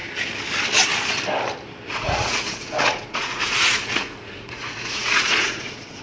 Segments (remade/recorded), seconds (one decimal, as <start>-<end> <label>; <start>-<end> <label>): 0.0-1.9 recorded; 1.9-6.0 remade